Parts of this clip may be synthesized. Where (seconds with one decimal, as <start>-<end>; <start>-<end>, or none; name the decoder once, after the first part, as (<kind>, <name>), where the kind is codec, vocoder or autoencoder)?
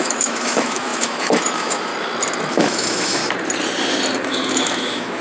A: 0.0-1.9 (autoencoder, DAC-VAE); 2.5-3.2; 4.2-5.2